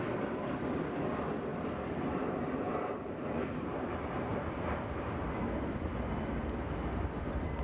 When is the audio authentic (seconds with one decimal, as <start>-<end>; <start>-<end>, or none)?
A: 0.0-1.5; 5.3-7.6